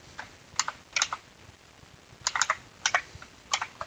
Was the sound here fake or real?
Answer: real